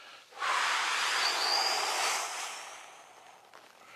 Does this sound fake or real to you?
real